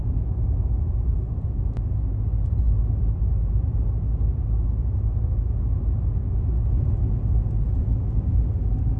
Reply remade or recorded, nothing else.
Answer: recorded